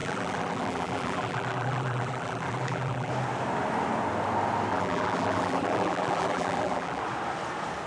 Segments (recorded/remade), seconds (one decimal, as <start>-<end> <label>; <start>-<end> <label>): 0.0-3.1 remade; 3.1-4.7 recorded; 4.7-7.0 remade; 7.0-7.9 recorded